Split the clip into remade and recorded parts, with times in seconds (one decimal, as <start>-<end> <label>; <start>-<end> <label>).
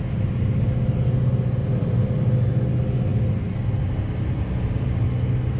0.0-1.6 recorded; 1.6-2.5 remade; 2.5-5.6 recorded